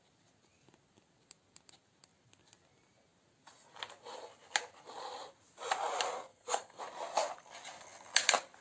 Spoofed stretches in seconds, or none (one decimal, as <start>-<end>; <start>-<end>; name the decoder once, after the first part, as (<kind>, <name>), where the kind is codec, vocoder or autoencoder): 6.3-6.8 (codec, SNAC)